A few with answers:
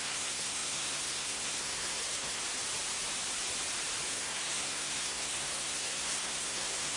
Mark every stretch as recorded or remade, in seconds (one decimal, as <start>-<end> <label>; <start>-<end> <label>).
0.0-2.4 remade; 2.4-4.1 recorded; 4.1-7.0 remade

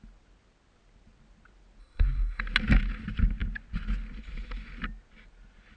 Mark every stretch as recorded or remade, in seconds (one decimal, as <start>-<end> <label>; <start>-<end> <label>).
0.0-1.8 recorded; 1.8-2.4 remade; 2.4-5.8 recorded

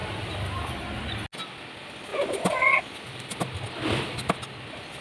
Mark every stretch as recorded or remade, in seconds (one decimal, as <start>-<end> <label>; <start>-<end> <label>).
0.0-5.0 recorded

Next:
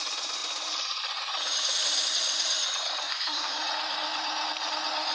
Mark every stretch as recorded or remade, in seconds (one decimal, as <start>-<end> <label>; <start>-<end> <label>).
0.0-3.0 recorded; 3.0-3.6 remade; 3.6-5.1 recorded

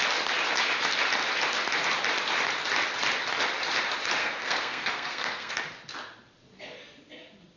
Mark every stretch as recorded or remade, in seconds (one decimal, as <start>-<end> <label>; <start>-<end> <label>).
0.0-4.2 recorded; 4.2-5.5 remade; 5.5-7.6 recorded

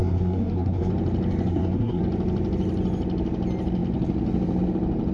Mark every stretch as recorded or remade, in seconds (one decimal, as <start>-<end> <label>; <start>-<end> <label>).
0.0-0.9 remade; 0.9-1.5 recorded; 1.5-2.0 remade; 2.0-5.1 recorded

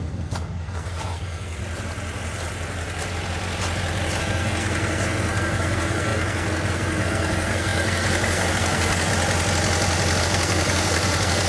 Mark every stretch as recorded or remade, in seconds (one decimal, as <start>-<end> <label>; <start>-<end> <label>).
0.0-1.6 remade; 1.6-4.2 recorded; 4.2-9.1 remade; 9.1-10.2 recorded; 10.2-11.5 remade

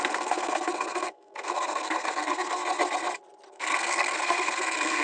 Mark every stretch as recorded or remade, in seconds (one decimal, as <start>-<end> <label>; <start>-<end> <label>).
0.0-2.6 remade; 2.6-3.5 recorded; 3.5-5.0 remade